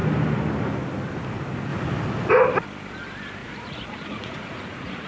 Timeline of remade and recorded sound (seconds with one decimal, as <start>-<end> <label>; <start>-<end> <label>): 0.0-3.4 recorded; 3.4-5.1 remade